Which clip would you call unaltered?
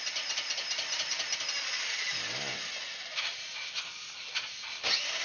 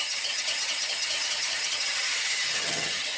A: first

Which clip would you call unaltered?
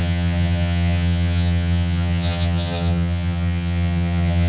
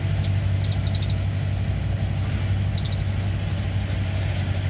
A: second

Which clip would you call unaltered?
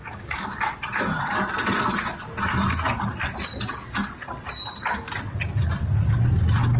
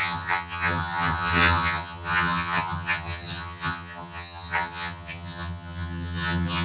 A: first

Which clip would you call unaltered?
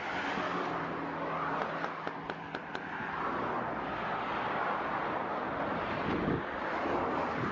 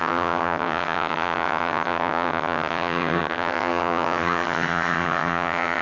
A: first